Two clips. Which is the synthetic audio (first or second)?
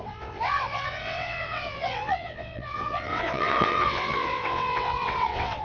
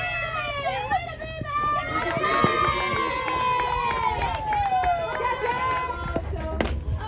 first